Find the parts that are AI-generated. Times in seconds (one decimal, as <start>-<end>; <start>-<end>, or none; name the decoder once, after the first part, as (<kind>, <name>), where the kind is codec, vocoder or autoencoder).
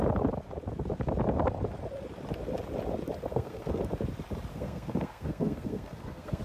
3.3-3.8 (codec, SNAC); 4.5-6.4